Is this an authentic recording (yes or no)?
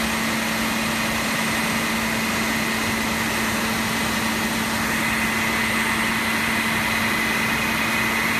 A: yes